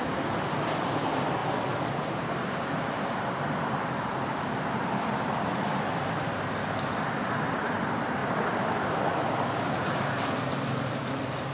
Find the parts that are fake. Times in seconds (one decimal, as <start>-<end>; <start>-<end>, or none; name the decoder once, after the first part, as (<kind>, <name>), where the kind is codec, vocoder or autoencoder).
0.0-1.4 (vocoder, BigVGAN v2); 2.6-8.2; 9.7-11.5

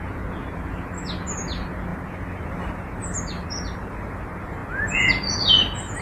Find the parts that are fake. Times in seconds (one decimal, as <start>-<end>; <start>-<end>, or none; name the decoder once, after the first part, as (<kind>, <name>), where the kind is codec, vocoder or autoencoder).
1.9-4.1 (vocoder, BigVGAN v2)

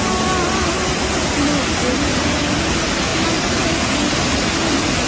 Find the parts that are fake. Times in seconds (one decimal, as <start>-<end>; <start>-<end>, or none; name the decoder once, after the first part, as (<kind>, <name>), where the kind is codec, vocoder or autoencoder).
3.1-3.7 (vocoder, BigVGAN v2)

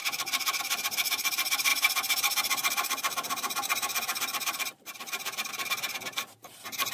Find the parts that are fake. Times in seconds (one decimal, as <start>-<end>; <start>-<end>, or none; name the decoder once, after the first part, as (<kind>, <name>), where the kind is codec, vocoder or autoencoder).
0.0-6.9 (vocoder, BigVGAN v2)

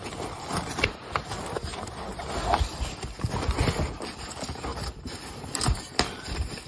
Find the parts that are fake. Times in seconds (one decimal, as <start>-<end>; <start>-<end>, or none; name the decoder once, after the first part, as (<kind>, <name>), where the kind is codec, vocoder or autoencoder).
1.7-2.3 (vocoder, BigVGAN v2); 4.7-6.7

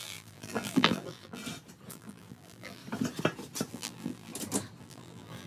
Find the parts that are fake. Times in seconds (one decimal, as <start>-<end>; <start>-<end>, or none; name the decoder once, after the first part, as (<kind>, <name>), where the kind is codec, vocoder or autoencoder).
0.0-1.4 (vocoder, BigVGAN v2); 1.9-2.8; 3.7-4.3; 4.8-5.5